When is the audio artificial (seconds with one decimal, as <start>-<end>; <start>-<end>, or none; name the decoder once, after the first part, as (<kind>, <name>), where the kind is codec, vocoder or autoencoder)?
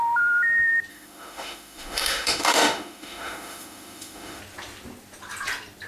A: 0.9-4.4 (autoencoder, DAC-VAE)